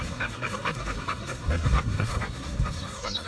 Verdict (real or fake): fake